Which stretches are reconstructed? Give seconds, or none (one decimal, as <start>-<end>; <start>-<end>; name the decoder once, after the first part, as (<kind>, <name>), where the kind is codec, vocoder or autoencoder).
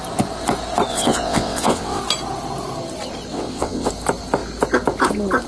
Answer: 0.9-2.0 (vocoder, WaveNeXt); 3.3-3.9